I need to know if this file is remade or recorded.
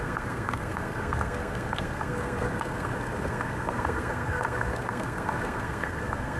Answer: remade